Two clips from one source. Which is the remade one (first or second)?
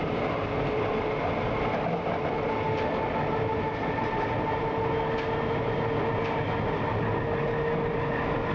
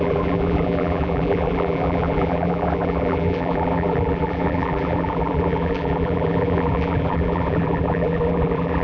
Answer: second